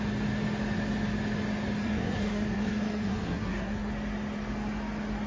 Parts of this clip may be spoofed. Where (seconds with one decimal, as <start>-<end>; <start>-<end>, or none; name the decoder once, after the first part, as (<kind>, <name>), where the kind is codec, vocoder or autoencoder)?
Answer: 1.8-3.9 (codec, SNAC)